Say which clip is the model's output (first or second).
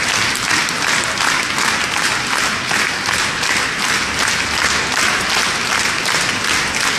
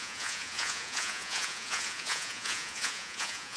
second